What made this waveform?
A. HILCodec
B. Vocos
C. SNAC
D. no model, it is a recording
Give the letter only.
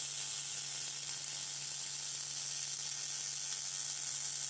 D